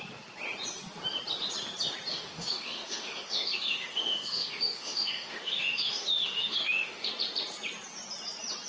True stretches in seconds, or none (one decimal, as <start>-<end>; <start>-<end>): 0.0-2.1; 7.1-8.7